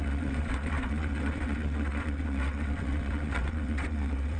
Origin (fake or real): fake